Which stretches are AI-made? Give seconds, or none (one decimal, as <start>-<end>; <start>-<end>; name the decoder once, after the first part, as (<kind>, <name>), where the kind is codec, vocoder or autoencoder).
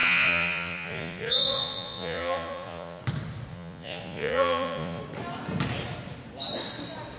0.0-3.0 (vocoder, Vocos); 3.5-5.0